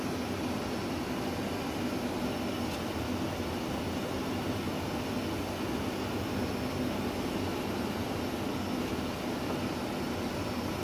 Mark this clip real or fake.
real